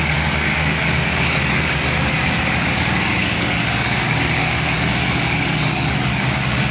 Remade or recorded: remade